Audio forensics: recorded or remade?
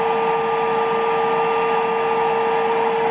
recorded